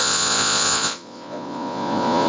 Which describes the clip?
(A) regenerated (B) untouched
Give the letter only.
A